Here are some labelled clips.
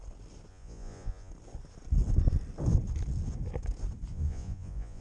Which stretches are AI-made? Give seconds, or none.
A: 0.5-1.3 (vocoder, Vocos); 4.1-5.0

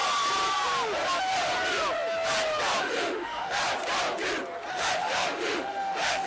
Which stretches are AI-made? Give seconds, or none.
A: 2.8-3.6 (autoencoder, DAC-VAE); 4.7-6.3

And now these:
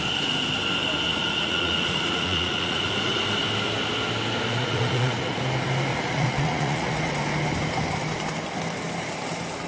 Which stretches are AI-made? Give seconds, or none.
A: 1.1-2.9 (vocoder, Vocos); 4.5-5.4; 5.9-7.1

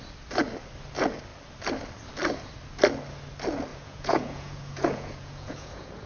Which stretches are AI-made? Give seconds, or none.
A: 3.7-6.1 (vocoder, Vocos)

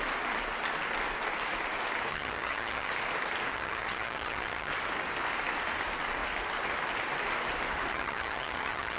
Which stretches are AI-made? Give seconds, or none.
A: 2.1-2.9 (vocoder, HiFi-GAN); 3.5-4.7; 7.9-9.0

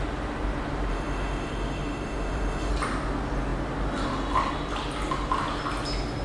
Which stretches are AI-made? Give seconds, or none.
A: 0.9-2.7 (autoencoder, DAC-VAE)